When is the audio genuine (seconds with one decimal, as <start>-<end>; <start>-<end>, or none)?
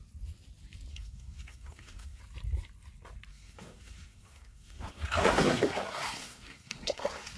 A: 0.0-0.9; 2.2-3.3